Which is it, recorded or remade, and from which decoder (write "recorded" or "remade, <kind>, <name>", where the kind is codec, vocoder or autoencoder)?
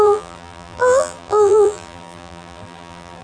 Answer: remade, vocoder, BigVGAN v2